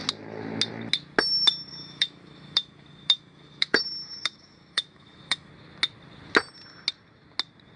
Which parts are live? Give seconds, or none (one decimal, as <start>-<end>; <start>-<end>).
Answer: 0.0-1.7; 5.5-7.8

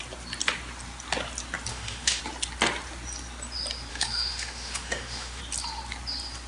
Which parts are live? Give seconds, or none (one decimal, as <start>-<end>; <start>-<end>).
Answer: 0.0-1.7; 2.2-3.9; 5.4-6.5

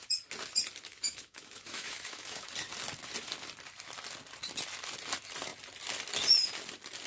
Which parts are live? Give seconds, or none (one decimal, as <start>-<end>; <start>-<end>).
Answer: 0.0-0.9; 2.5-7.1

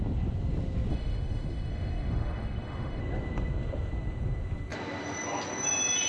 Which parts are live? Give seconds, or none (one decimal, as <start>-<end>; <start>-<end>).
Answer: 0.0-0.9; 3.0-6.1

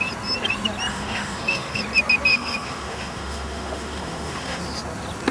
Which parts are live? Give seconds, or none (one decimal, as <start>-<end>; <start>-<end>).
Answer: 0.0-0.9; 1.8-2.3; 4.6-5.3

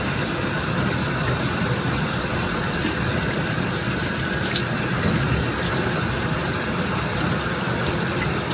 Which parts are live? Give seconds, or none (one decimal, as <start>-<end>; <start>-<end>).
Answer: 0.0-8.5